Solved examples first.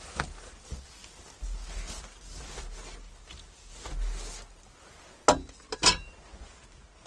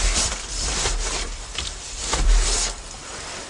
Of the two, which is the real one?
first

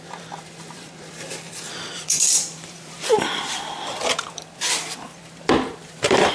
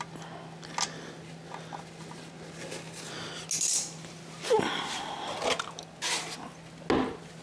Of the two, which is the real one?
second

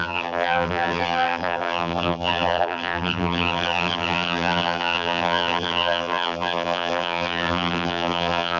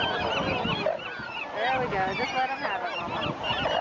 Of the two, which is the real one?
second